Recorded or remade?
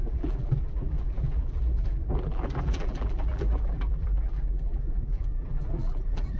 remade